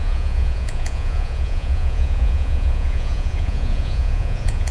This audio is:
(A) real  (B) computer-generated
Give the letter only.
B